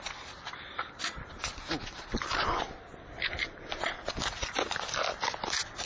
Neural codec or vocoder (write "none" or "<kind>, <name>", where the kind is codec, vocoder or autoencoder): none